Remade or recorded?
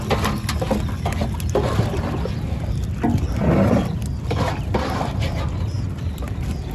recorded